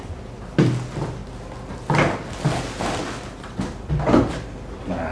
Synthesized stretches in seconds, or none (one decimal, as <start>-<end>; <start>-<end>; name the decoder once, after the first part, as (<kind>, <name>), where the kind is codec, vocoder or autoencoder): none

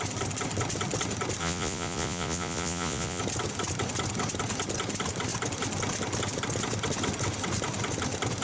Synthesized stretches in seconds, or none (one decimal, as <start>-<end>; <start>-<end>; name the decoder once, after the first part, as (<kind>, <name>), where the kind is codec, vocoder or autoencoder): 1.4-3.2 (vocoder, Vocos)

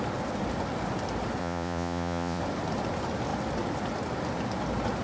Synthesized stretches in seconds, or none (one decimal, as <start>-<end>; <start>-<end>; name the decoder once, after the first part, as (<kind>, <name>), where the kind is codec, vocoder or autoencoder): 1.4-2.4 (vocoder, Vocos)

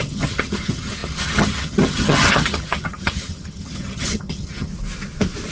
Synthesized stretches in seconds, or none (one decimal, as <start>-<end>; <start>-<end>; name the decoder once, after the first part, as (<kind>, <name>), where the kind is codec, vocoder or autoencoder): 0.0-4.7 (vocoder, HiFi-GAN)

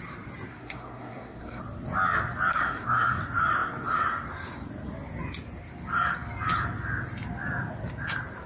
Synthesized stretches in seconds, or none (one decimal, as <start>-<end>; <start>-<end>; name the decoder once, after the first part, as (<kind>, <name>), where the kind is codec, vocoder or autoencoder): 0.5-1.6 (codec, SNAC); 2.5-3.2